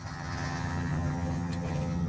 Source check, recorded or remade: remade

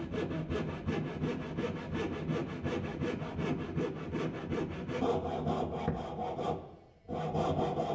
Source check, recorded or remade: recorded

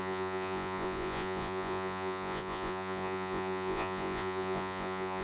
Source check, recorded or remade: remade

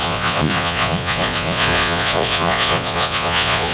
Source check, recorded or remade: remade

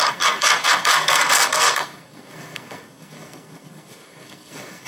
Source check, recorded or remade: remade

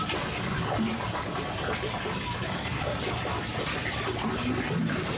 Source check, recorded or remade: recorded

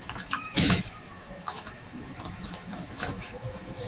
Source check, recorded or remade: remade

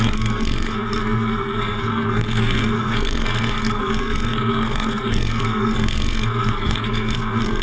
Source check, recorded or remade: remade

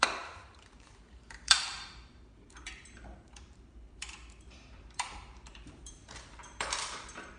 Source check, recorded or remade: remade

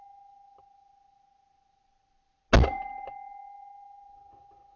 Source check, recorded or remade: recorded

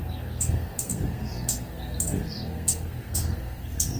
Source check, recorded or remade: remade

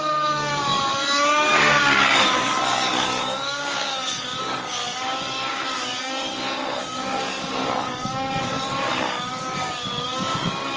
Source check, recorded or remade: remade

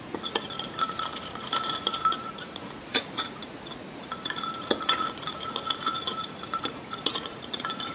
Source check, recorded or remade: remade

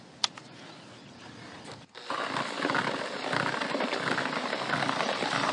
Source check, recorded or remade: recorded